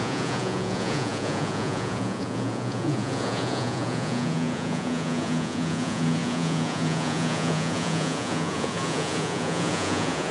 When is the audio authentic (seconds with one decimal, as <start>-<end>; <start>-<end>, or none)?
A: none